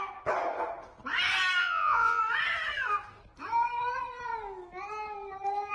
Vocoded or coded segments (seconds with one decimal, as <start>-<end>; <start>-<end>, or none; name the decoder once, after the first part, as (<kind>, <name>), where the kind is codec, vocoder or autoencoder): 1.6-2.2 (vocoder, Vocos)